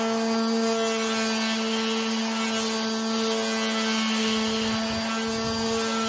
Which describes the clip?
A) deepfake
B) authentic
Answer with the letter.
B